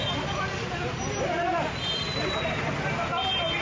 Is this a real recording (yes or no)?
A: yes